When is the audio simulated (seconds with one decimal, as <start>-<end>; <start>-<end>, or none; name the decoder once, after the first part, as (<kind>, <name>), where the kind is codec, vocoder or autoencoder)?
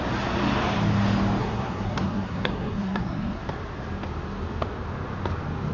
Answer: 1.4-3.4 (codec, SNAC)